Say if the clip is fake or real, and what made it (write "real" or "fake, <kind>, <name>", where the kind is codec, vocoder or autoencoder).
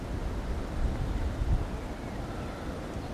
real